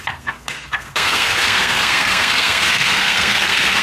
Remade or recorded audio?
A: remade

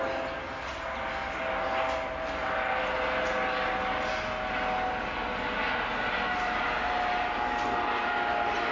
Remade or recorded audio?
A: recorded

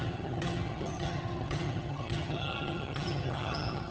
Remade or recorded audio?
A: remade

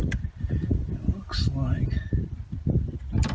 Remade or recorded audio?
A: recorded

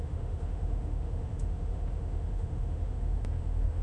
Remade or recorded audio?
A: remade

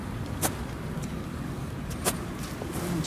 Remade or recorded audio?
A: recorded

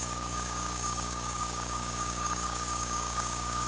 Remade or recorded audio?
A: remade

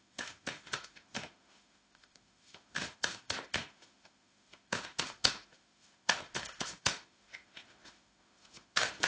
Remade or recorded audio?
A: remade